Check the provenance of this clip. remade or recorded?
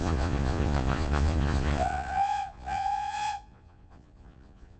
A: remade